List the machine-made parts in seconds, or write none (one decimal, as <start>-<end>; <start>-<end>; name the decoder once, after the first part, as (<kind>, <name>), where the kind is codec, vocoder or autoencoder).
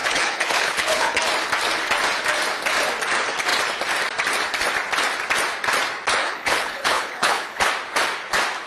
0.0-1.2 (codec, HILCodec); 6.2-7.7